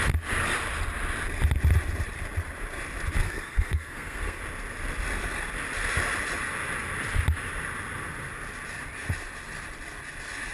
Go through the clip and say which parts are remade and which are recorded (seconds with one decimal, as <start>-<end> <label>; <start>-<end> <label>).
0.0-3.2 recorded; 3.2-4.4 remade; 4.4-10.5 recorded